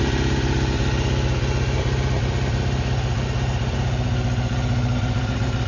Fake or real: real